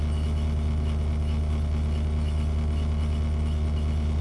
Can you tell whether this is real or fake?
real